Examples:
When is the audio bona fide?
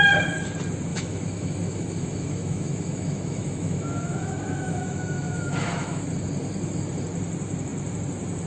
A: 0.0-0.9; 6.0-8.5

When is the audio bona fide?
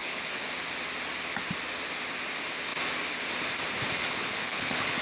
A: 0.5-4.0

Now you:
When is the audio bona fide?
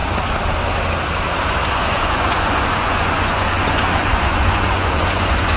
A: 0.0-1.7